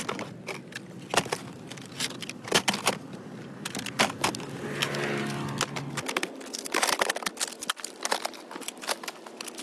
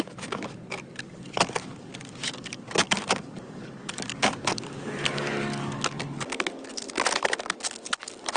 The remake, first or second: second